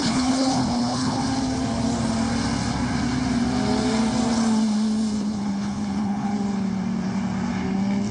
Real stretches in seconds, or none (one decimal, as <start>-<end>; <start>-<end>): 1.2-5.2; 6.3-8.1